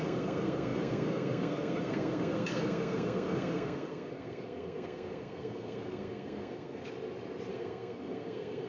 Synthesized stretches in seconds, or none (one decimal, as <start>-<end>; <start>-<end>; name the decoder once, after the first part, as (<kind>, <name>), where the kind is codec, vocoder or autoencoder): 0.0-6.8 (codec, SNAC); 7.5-8.7